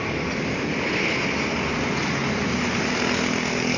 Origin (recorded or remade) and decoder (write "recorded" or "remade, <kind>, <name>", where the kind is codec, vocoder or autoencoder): recorded